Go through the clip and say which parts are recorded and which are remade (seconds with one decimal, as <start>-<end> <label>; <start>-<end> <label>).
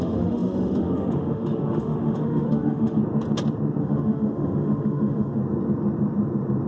0.0-3.0 remade; 3.0-3.8 recorded; 3.8-5.4 remade; 5.4-6.7 recorded